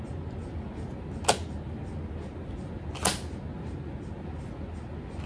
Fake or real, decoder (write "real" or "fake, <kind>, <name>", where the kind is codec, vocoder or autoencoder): real